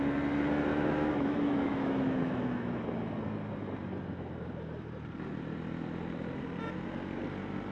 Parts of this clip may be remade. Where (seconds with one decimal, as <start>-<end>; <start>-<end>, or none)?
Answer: 0.7-2.8